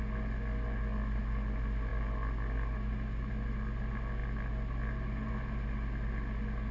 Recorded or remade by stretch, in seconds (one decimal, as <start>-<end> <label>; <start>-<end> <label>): 0.0-6.7 recorded